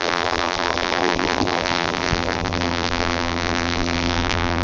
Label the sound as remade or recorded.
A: remade